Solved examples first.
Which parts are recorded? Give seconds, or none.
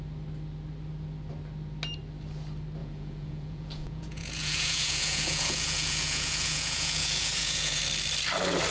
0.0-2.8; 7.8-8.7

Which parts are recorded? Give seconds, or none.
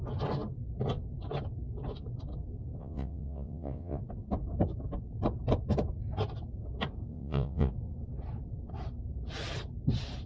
0.0-2.8; 4.0-7.1; 7.7-10.3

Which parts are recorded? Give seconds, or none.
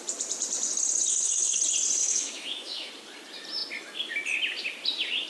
0.0-1.1; 1.6-2.0; 2.9-5.3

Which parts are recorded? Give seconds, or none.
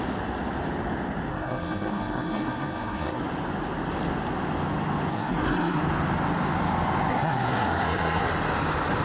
0.0-1.3; 3.2-5.1; 5.8-7.1; 8.3-9.0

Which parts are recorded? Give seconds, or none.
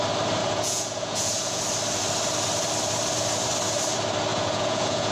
0.0-0.4; 1.6-4.3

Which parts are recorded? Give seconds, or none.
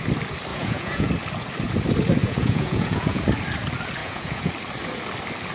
0.0-0.5; 1.1-2.2; 3.2-4.0; 4.5-5.5